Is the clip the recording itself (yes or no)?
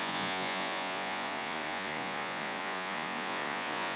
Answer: no